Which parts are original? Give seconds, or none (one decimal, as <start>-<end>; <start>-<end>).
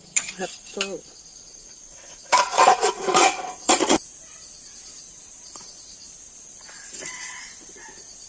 0.0-1.5; 4.1-8.3